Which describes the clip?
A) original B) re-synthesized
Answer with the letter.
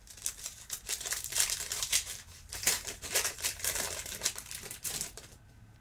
B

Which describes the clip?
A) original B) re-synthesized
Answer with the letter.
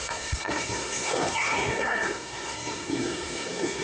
B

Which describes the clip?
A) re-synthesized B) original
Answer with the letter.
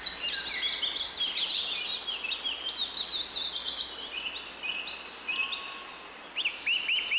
B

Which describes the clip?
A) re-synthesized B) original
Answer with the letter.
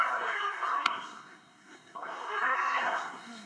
A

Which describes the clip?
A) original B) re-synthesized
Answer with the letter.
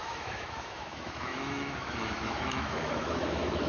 B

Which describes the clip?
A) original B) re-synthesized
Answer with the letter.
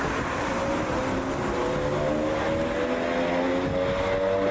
A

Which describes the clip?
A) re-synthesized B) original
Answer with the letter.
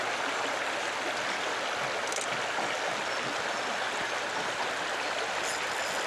B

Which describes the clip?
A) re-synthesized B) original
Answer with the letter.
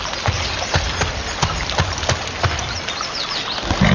B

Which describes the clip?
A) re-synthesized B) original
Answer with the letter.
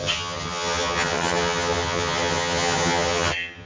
A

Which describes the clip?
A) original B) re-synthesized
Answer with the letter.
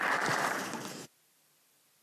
B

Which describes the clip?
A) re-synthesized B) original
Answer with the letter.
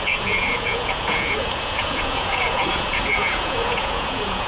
A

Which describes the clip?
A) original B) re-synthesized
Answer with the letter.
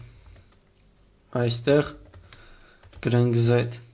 A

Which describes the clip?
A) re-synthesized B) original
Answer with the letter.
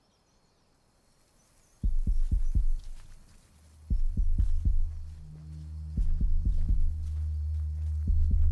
B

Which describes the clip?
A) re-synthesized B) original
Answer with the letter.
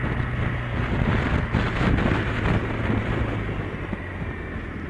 B